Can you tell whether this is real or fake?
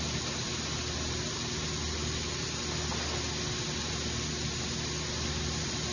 real